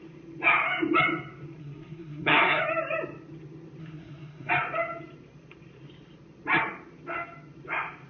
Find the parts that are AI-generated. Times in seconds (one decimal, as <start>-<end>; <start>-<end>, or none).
1.6-2.6; 3.8-4.5